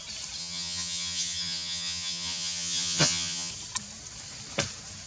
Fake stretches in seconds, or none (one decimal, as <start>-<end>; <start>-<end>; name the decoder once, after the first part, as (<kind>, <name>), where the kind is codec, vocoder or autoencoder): 0.4-3.5 (vocoder, HiFi-GAN)